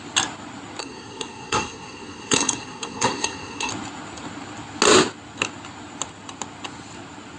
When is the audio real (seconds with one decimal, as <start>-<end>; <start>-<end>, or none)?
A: 0.0-0.8; 3.7-7.4